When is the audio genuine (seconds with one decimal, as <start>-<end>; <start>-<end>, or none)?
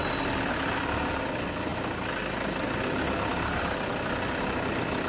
0.0-5.1